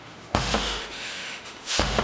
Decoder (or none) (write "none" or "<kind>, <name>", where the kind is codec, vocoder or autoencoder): autoencoder, DAC-VAE